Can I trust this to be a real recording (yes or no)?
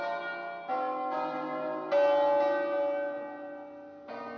yes